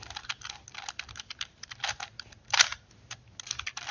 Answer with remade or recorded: recorded